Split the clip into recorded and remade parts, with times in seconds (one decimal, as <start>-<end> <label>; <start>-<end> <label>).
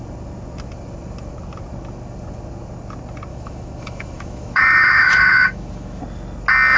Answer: 0.0-3.3 recorded; 3.3-6.0 remade; 6.0-6.8 recorded